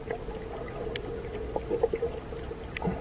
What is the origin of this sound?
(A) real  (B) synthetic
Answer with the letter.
A